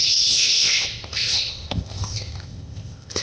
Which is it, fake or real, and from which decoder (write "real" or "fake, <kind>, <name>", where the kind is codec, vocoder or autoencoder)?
fake, codec, ZipCodec